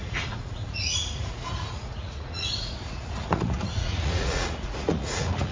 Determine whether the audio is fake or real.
fake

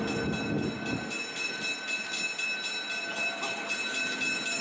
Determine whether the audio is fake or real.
real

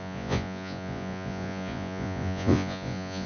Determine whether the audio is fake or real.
fake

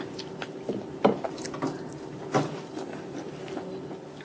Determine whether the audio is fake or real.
real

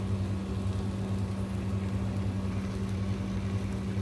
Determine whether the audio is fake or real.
real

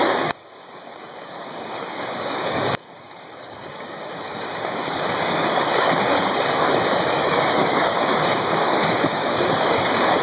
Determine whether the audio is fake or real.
fake